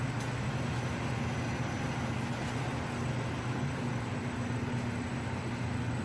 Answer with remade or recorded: recorded